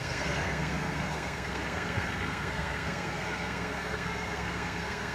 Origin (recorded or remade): remade